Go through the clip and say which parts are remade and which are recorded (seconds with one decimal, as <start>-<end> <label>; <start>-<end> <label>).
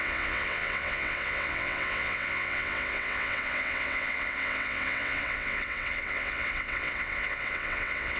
0.0-8.2 remade